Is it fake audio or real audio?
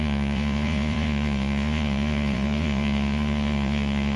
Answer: fake